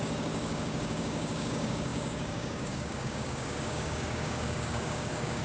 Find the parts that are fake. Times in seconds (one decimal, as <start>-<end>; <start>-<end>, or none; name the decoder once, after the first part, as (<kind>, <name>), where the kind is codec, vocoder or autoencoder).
0.0-5.4 (codec, DAC)